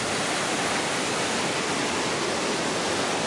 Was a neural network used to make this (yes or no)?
no